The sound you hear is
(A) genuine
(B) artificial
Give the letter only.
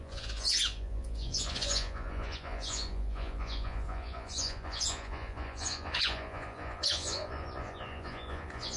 B